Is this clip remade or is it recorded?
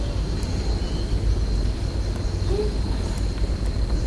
recorded